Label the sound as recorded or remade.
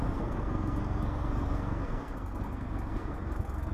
remade